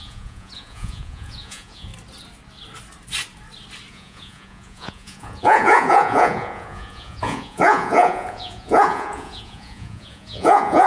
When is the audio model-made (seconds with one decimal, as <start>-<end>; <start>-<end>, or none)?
0.0-1.9; 3.9-10.9